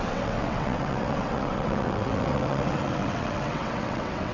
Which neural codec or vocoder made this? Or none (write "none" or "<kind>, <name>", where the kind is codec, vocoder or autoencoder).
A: vocoder, WaveNeXt